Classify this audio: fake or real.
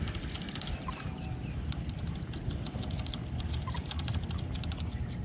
real